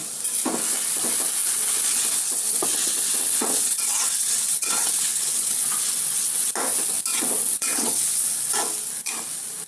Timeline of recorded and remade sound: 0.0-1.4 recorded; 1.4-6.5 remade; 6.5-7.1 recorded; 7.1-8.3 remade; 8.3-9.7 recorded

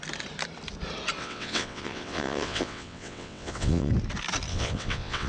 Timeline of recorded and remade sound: 0.0-1.2 recorded; 1.2-3.9 remade; 3.9-4.5 recorded; 4.5-5.3 remade

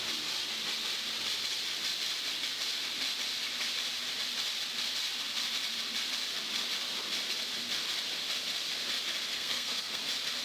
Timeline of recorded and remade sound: 0.0-9.3 recorded; 9.3-10.0 remade; 10.0-10.4 recorded

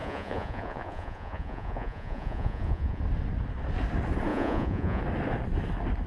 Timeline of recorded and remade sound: 0.0-3.0 remade; 3.0-4.3 recorded; 4.3-5.0 remade; 5.0-6.1 recorded